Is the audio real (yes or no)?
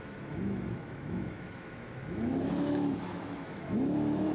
no